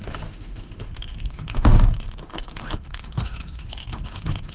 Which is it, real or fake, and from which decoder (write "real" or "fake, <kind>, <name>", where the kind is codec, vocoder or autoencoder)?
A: fake, autoencoder, DAC-VAE